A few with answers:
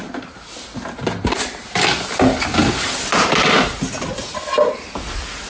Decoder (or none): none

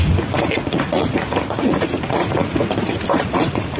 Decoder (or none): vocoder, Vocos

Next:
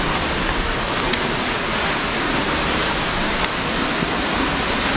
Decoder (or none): none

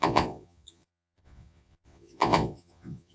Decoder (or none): vocoder, Vocos